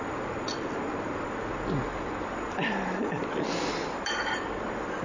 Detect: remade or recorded recorded